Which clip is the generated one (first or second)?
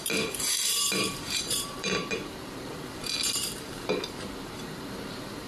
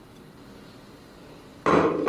first